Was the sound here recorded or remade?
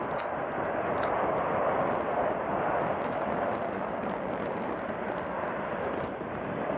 recorded